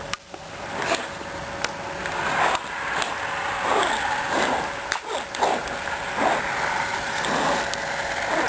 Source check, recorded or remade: recorded